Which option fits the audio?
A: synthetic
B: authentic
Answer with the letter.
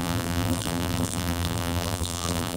A